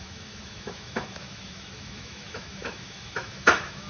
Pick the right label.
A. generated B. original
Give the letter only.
A